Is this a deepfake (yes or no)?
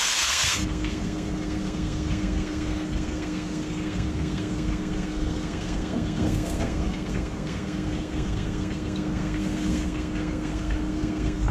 yes